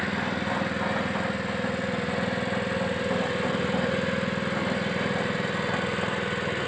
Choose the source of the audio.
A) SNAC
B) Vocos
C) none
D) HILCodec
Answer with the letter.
C